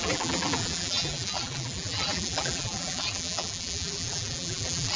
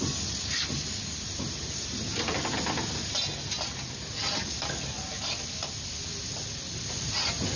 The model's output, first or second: first